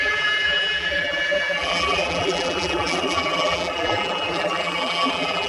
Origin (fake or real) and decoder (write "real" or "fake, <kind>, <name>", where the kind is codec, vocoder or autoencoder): fake, vocoder, BigVGAN v2